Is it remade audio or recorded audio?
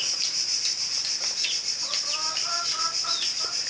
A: recorded